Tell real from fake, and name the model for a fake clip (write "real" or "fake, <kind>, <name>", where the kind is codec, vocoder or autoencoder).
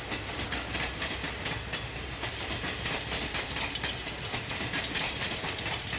real